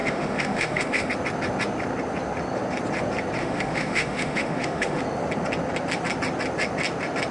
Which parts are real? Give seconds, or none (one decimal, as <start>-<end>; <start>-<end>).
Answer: 1.1-3.4; 5.0-7.3